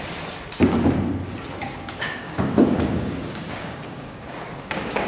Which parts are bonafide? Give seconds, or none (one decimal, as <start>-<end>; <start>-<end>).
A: 0.0-1.6